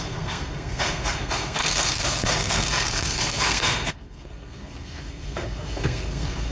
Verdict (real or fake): fake